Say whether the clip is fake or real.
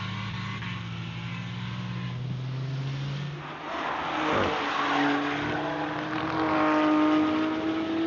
real